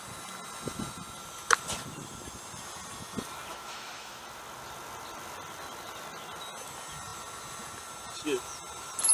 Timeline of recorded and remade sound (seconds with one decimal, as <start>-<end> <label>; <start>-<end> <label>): 0.0-3.5 recorded; 3.5-4.2 remade; 4.2-9.1 recorded